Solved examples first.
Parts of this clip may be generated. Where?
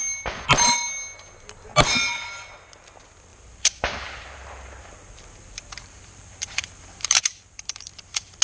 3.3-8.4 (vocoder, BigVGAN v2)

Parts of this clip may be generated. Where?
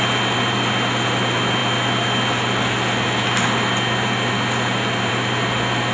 none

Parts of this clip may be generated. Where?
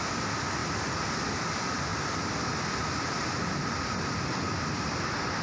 none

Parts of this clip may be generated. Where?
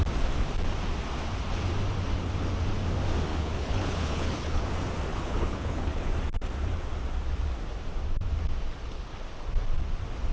3.3-4.6 (codec, HILCodec); 5.1-6.1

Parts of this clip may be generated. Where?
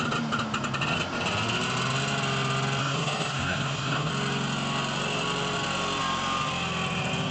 2.8-4.1 (codec, SNAC)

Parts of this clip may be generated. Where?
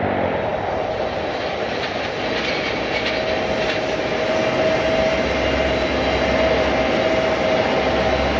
none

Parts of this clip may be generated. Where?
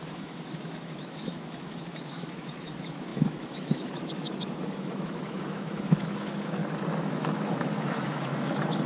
0.0-6.6 (autoencoder, DAC-VAE); 7.1-8.9